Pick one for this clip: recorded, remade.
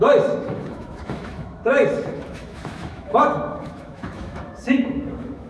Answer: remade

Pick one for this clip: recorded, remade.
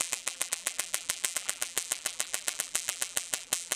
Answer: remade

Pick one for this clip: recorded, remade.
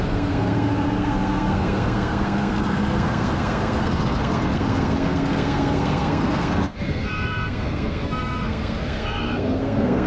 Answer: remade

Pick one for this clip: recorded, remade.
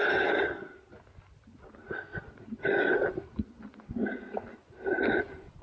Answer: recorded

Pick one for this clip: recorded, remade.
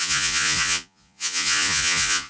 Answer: remade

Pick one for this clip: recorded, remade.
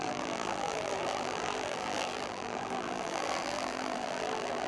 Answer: remade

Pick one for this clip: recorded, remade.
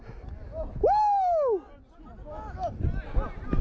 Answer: recorded